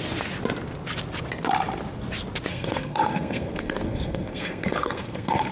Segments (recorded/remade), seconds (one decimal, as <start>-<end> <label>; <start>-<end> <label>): 0.0-2.5 recorded; 2.5-5.5 remade